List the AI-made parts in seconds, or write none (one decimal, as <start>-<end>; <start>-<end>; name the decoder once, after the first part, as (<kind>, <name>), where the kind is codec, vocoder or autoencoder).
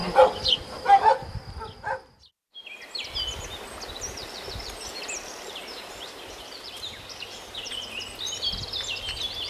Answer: 0.0-1.4 (vocoder, BigVGAN v2); 4.2-7.7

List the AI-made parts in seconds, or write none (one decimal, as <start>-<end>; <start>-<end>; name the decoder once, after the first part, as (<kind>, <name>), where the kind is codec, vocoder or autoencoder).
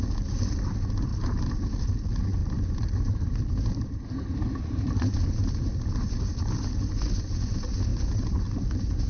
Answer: 1.1-1.8 (vocoder, BigVGAN v2); 2.4-5.8; 7.9-9.1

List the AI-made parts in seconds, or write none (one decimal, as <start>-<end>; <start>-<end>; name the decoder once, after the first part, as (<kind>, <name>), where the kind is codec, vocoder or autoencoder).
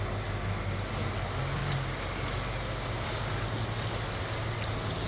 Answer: none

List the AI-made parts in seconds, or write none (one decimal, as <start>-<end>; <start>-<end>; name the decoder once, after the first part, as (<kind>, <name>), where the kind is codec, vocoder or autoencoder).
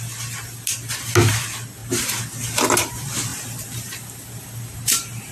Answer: none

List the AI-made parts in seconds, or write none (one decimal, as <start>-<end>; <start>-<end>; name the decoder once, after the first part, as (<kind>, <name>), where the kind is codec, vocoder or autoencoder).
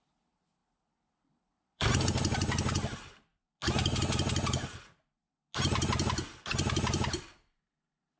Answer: 0.6-2.0 (vocoder, BigVGAN v2)